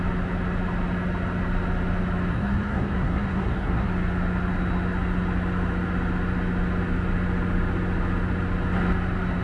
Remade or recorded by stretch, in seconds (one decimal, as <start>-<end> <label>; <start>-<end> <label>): 0.0-2.3 recorded; 2.3-3.9 remade; 3.9-9.4 recorded